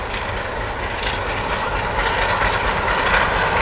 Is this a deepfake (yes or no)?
no